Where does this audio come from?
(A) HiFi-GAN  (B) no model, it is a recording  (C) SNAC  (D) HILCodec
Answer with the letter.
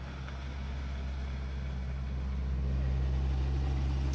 B